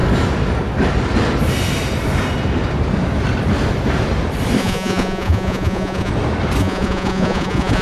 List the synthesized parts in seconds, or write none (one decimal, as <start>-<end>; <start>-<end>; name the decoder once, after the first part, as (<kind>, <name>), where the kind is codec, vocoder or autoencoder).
4.6-6.1 (vocoder, Vocos); 6.6-7.8